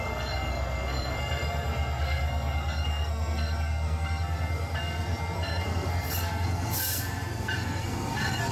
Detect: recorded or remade remade